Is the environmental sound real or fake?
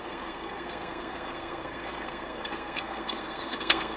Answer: fake